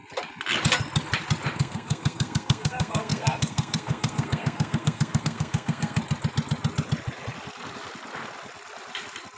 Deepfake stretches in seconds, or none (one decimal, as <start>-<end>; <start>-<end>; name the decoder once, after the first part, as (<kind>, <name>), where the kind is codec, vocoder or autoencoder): 1.6-6.0 (codec, SNAC)